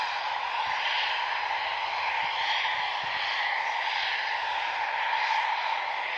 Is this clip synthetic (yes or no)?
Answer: no